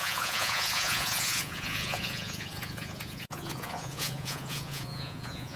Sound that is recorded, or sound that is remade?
remade